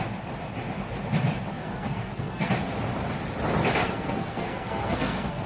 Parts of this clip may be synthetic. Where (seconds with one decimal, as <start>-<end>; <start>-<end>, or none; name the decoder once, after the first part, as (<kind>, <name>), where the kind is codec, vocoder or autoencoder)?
1.5-2.5 (codec, SNAC); 3.8-5.5

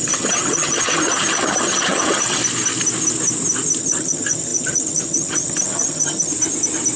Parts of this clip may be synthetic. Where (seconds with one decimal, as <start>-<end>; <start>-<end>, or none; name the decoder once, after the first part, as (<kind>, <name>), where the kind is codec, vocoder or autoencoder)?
0.0-2.4 (vocoder, HiFi-GAN); 3.8-6.3

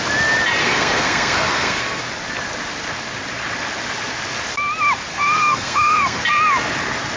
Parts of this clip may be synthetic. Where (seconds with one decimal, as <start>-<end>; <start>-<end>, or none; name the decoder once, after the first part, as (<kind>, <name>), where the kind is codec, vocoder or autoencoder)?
0.6-2.0 (codec, SNAC); 5.1-6.2

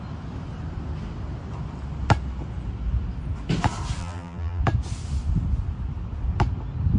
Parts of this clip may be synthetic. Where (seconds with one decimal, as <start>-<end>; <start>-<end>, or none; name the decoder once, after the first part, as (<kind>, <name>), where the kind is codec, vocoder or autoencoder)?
4.0-4.6 (vocoder, BigVGAN v2)

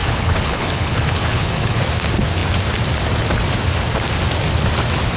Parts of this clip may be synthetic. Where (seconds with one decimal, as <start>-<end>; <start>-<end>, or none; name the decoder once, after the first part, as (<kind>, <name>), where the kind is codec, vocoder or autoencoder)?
0.0-1.8 (codec, HILCodec)

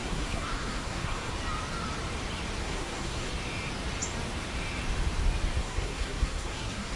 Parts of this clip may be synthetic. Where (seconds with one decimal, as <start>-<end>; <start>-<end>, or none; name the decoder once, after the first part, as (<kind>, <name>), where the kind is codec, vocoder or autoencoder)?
0.0-1.3 (codec, SNAC); 2.6-3.3; 5.6-7.0

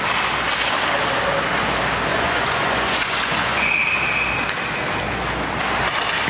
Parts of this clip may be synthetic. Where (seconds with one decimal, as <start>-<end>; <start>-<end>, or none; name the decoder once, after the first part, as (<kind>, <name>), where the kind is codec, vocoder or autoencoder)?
2.1-3.7 (vocoder, Vocos)

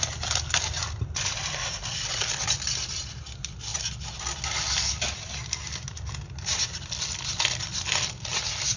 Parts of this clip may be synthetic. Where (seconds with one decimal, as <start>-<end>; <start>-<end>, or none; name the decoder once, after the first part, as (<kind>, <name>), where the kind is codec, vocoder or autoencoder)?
none